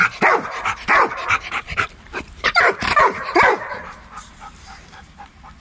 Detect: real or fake fake